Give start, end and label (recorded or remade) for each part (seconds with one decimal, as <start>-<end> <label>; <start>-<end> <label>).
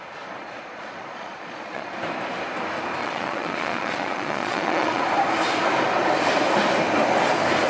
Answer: 0.0-0.4 recorded; 0.4-1.9 remade; 1.9-3.0 recorded; 3.0-5.0 remade; 5.0-7.7 recorded